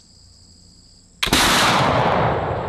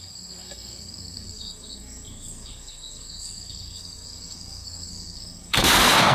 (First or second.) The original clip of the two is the first